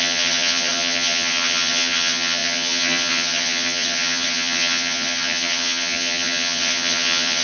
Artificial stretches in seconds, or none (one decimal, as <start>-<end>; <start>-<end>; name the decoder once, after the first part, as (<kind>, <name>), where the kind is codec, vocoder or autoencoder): 0.0-7.4 (vocoder, HiFi-GAN)

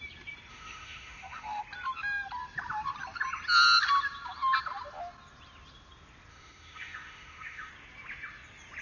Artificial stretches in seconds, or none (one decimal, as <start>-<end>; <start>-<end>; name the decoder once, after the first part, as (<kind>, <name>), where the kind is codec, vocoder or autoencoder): 0.5-1.6 (autoencoder, DAC-VAE); 6.3-7.7